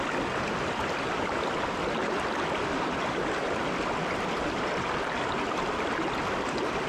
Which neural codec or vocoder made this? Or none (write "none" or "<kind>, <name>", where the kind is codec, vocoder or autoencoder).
none